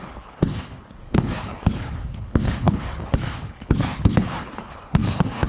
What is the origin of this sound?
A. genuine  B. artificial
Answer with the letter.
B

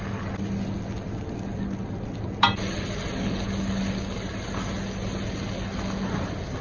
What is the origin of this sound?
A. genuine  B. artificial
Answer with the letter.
A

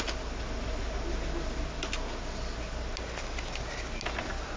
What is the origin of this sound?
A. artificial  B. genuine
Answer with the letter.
B